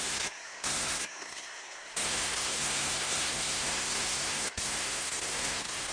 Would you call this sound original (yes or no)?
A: no